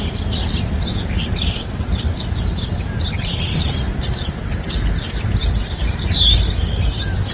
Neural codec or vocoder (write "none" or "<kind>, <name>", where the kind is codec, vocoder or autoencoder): none